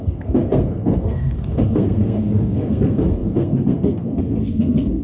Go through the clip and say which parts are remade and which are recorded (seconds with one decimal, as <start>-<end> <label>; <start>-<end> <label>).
0.0-5.0 remade